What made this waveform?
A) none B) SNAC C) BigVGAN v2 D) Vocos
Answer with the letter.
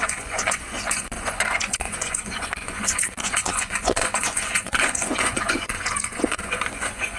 D